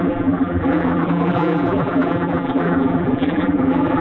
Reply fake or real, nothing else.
fake